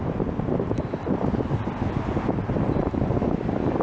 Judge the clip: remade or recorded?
recorded